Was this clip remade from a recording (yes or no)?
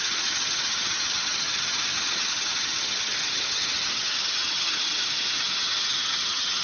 yes